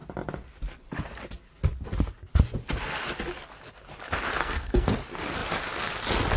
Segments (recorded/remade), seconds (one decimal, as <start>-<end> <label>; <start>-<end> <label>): 0.0-4.4 recorded; 4.4-4.9 remade; 4.9-6.4 recorded